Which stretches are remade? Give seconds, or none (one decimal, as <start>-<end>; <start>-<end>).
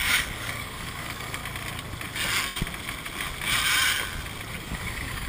0.0-1.4; 4.6-5.3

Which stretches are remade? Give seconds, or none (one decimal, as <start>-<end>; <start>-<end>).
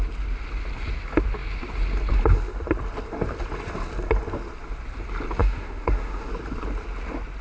5.4-6.3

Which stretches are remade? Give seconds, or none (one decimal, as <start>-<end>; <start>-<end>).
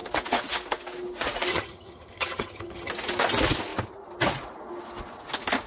1.5-2.9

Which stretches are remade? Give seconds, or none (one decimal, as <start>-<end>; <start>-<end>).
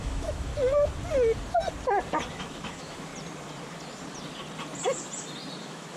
0.0-0.5; 2.3-3.1; 5.6-6.0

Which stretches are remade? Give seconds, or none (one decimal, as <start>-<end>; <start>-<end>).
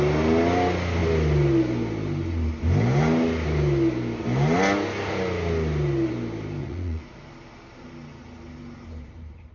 6.6-7.2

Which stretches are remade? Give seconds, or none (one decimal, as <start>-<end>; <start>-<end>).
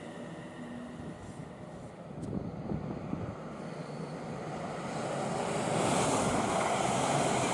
none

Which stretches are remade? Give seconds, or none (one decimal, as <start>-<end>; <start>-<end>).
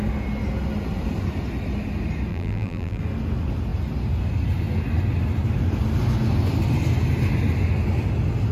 2.3-3.0